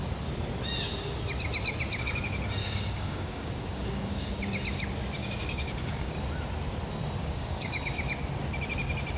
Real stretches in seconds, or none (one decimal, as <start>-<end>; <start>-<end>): 0.0-2.6; 4.3-5.2; 6.1-7.2; 7.8-9.2